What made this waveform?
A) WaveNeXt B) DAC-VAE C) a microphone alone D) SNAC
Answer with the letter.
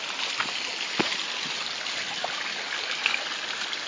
C